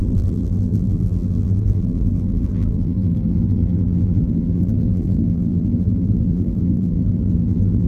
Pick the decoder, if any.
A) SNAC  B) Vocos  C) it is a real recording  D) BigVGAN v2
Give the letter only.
D